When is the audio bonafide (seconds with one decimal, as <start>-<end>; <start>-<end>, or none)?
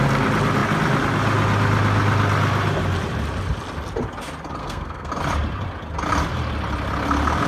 0.0-4.6; 5.1-7.5